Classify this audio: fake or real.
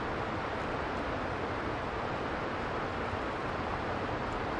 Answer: real